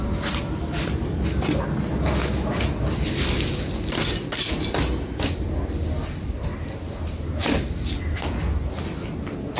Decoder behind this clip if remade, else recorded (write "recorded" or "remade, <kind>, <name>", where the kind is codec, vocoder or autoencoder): recorded